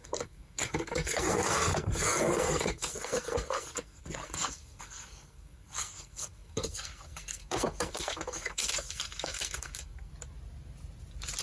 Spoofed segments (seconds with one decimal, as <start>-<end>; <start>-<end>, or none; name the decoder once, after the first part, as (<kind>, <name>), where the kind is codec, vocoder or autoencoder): 0.0-10.1 (codec, SNAC)